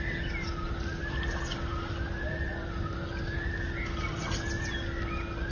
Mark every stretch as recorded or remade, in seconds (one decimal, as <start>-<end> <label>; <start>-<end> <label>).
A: 0.0-5.5 recorded